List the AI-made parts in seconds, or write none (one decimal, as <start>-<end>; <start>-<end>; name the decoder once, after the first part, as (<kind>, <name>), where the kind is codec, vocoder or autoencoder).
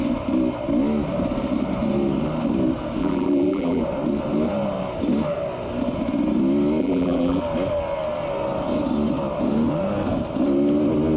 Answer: 3.0-3.8 (vocoder, BigVGAN v2); 6.8-7.4